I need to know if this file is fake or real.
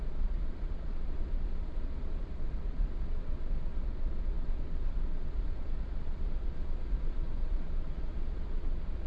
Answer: fake